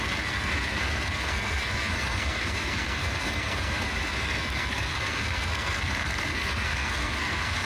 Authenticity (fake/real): fake